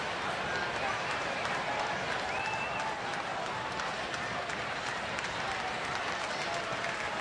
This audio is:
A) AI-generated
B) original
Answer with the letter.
B